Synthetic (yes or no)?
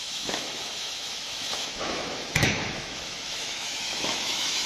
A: yes